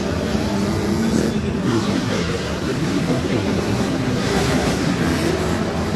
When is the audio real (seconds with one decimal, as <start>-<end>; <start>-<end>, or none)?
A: 0.0-1.6; 5.0-6.0